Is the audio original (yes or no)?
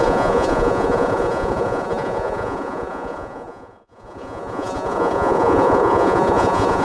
no